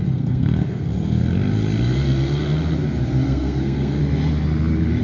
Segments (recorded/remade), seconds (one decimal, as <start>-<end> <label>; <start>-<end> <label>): 0.0-1.2 remade; 1.2-3.2 recorded; 3.2-4.0 remade; 4.0-5.0 recorded